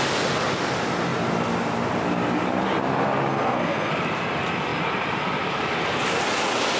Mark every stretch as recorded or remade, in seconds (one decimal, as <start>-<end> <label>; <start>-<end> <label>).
0.0-3.3 recorded; 3.3-3.9 remade; 3.9-6.8 recorded